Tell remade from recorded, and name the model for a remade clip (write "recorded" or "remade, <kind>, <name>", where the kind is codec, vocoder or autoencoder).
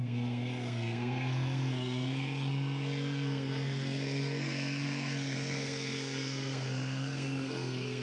remade, codec, SNAC